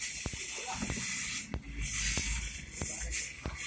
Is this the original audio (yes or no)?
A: yes